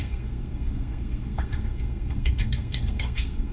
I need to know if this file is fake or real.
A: fake